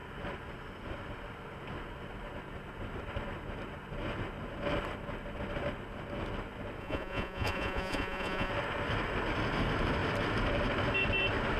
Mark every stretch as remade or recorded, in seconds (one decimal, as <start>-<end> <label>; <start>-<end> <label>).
0.0-6.8 recorded; 6.8-8.5 remade; 8.5-11.6 recorded